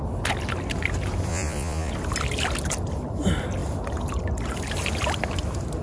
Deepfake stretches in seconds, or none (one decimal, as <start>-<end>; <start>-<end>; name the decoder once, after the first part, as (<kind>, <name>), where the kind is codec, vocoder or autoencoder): 1.3-1.9 (vocoder, Vocos)